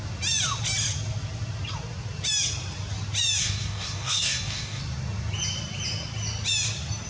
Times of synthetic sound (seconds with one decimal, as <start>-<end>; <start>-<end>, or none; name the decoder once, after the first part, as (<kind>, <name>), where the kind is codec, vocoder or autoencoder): 3.4-4.8 (codec, DAC)

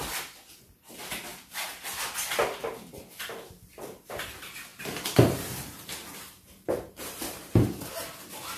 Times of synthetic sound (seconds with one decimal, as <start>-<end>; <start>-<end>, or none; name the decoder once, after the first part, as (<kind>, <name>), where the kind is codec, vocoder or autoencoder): 1.3-2.0 (vocoder, BigVGAN v2); 4.7-7.8